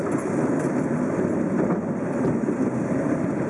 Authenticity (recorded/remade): remade